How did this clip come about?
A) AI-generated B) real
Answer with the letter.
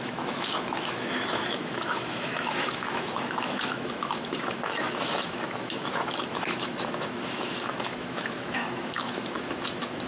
A